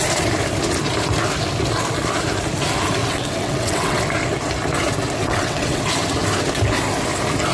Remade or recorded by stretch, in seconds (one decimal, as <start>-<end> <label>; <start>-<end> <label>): 0.0-3.0 recorded; 3.0-4.0 remade; 4.0-5.2 recorded; 5.2-5.8 remade; 5.8-7.5 recorded